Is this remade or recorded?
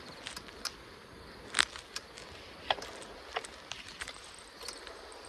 recorded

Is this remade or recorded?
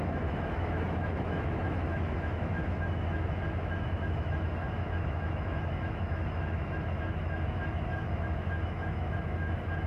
remade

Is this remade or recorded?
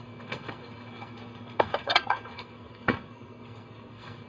remade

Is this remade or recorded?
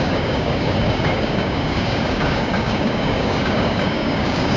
remade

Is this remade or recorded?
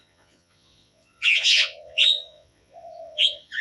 remade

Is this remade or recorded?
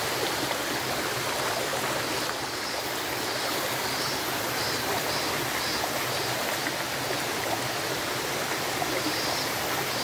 recorded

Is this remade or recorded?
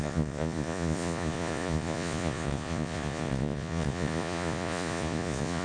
remade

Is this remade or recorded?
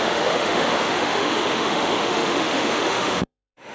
remade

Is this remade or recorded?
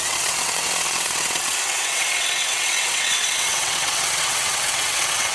remade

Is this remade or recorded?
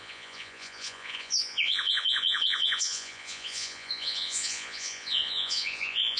remade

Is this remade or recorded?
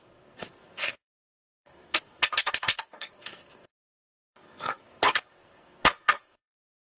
remade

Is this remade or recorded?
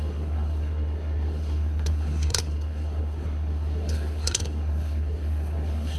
remade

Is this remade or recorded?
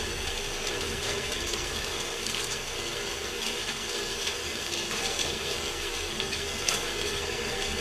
remade